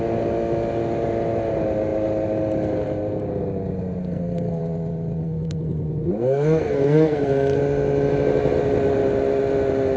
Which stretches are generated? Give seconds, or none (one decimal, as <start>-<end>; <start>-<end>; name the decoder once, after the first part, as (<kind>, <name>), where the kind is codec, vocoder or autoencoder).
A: 4.0-4.6 (codec, SNAC); 5.2-7.6